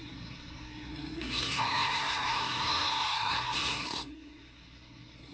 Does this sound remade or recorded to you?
remade